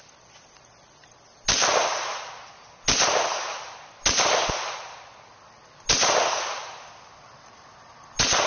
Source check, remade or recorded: recorded